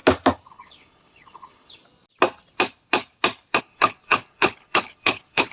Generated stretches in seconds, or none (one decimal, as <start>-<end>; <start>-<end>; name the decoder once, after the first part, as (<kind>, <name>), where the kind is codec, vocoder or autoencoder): 0.5-1.8 (codec, HILCodec); 3.6-5.5